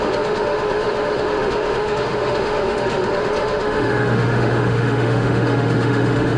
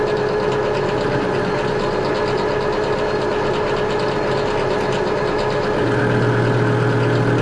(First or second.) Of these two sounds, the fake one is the first